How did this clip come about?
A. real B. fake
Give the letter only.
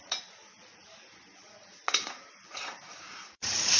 B